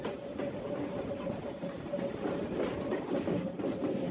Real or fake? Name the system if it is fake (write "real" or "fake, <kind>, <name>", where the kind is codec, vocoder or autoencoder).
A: real